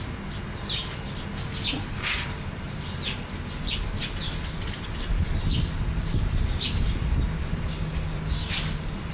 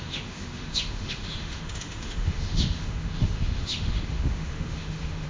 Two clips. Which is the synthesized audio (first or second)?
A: second